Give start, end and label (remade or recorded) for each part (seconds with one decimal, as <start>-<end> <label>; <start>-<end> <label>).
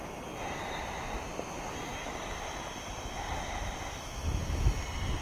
0.0-1.9 recorded; 1.9-4.8 remade; 4.8-5.2 recorded